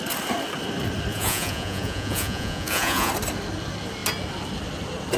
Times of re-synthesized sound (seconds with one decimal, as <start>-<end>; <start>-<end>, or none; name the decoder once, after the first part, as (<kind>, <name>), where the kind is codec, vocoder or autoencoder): 1.1-3.1 (vocoder, Vocos)